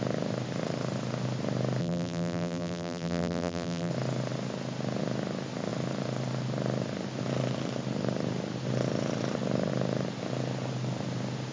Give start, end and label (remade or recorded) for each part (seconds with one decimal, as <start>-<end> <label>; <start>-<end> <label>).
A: 0.0-1.8 recorded; 1.8-3.9 remade; 3.9-11.5 recorded

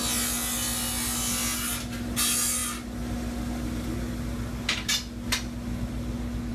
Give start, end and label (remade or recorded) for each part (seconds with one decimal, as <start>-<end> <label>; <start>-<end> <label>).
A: 0.0-6.5 recorded

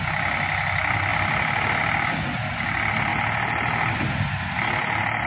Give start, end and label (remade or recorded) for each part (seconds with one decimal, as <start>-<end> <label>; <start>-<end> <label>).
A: 0.0-1.1 recorded; 1.1-1.8 remade; 1.8-5.3 recorded

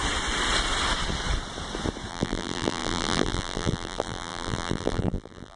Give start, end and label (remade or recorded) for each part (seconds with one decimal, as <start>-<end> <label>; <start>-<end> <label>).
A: 0.0-2.1 recorded; 2.1-5.6 remade

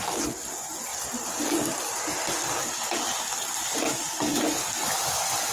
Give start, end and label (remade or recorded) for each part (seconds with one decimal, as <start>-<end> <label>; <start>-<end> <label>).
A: 0.0-4.3 recorded; 4.3-4.9 remade; 4.9-5.5 recorded